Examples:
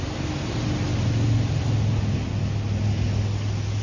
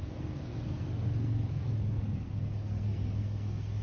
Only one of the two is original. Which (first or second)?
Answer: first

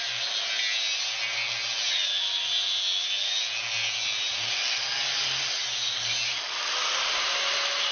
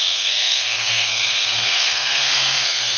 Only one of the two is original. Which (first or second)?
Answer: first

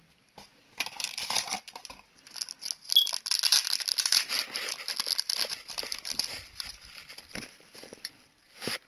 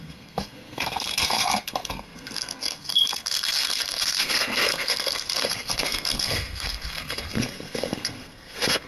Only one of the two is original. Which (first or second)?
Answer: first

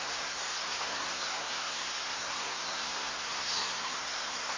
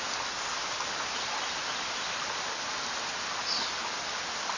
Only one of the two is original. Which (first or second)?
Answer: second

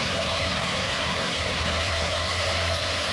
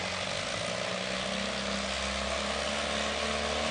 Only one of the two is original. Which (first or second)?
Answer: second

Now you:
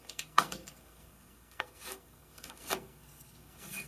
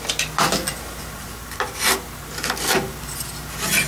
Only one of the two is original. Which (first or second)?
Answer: second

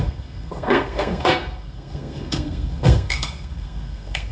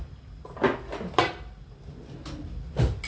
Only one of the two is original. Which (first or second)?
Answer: second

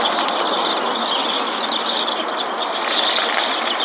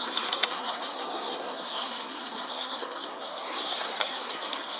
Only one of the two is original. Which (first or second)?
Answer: first